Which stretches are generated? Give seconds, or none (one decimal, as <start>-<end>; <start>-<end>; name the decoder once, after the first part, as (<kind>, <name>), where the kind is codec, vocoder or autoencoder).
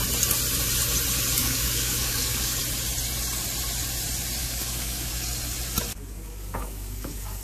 1.4-2.6 (codec, DAC); 4.4-5.1; 5.9-7.4